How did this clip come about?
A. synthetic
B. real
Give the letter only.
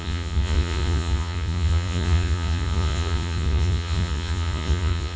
A